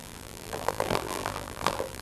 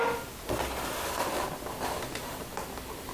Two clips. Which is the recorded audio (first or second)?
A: second